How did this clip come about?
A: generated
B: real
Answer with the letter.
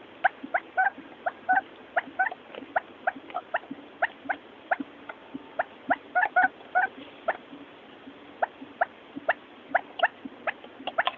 B